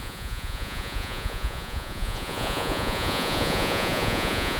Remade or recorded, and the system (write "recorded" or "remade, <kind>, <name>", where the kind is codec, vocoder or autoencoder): remade, vocoder, Vocos